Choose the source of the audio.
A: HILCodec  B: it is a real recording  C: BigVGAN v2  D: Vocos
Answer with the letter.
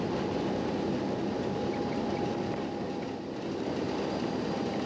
B